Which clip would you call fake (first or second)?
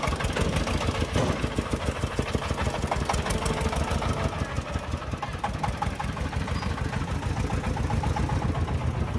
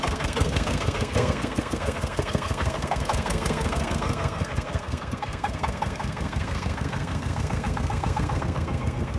second